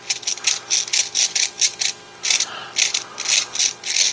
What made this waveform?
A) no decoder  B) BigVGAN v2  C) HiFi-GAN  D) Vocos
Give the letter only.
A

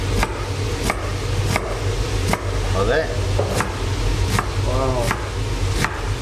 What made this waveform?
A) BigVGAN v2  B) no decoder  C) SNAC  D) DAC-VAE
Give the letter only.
B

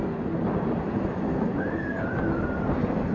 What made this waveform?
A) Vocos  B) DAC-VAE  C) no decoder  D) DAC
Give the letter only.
C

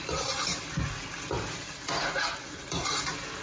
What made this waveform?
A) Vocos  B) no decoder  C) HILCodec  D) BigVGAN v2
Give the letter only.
B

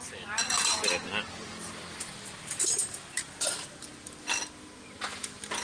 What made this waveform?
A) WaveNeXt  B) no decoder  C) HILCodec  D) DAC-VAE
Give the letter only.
B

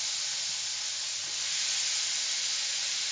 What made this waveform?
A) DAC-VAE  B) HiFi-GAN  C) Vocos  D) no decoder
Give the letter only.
D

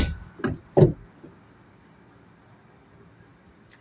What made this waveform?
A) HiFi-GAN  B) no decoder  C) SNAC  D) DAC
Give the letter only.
B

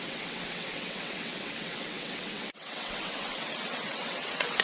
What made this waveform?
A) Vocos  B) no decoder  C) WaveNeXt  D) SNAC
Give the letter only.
C